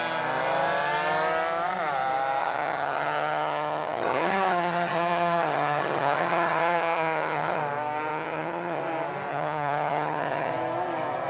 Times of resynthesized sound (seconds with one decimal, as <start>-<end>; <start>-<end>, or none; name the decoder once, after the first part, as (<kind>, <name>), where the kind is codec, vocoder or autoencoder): 2.4-7.6 (vocoder, HiFi-GAN); 8.1-8.8; 9.3-10.5